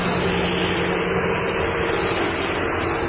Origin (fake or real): real